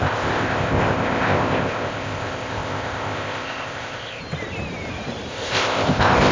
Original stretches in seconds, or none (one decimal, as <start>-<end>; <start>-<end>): 4.2-5.3